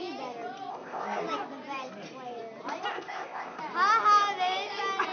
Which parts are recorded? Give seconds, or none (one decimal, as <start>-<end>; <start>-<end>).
0.0-0.7; 1.2-2.9; 3.6-5.1